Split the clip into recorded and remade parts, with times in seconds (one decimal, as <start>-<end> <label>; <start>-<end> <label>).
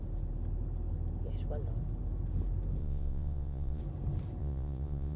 0.0-2.8 recorded; 2.8-3.8 remade; 3.8-4.4 recorded; 4.4-5.2 remade